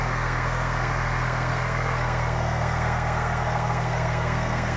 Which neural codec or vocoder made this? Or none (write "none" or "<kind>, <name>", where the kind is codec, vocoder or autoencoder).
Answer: codec, SNAC